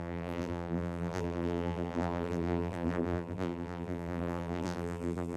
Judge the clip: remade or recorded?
remade